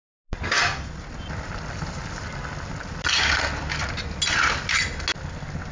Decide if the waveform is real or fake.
real